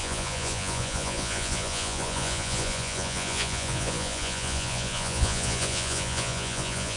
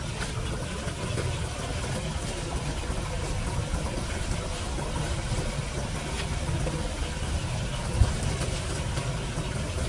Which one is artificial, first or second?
first